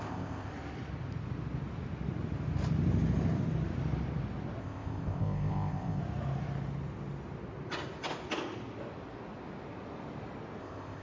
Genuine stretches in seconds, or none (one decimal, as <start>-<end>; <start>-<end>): 0.5-4.6; 6.0-10.6